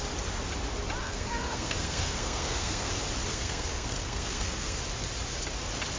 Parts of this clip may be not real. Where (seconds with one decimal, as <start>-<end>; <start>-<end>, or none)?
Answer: 1.0-2.9; 3.3-4.8